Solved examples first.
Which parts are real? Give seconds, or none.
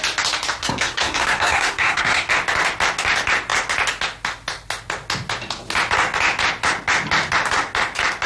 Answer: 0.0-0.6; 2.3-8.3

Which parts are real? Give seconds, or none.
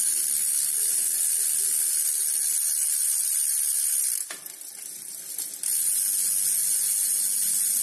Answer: 0.0-7.8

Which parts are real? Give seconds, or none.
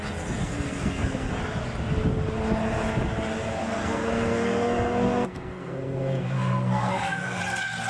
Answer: 0.0-0.4; 1.4-3.6; 7.4-7.9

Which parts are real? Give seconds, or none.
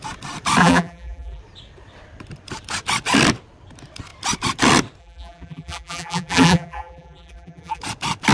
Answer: 0.0-0.6; 1.4-5.0; 7.8-8.3